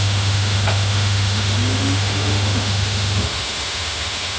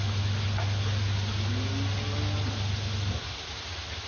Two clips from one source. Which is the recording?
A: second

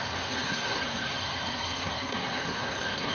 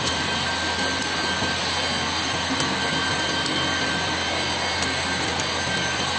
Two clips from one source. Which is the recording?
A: second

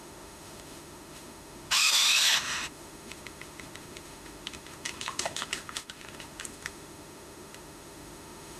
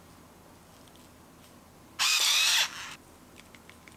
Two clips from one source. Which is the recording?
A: second